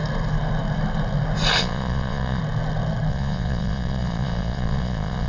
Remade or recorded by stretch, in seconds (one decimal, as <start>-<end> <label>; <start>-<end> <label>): 0.0-1.6 recorded; 1.6-2.4 remade; 2.4-3.1 recorded; 3.1-5.3 remade